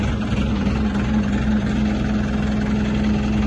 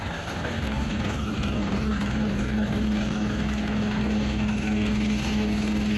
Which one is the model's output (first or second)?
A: second